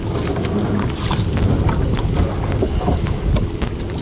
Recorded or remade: recorded